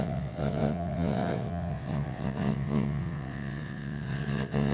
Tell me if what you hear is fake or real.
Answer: fake